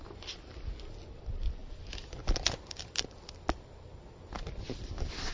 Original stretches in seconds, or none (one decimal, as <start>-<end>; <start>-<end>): 0.0-5.3